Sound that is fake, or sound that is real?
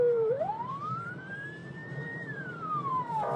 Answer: fake